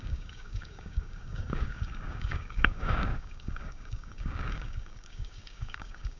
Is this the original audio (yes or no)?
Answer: no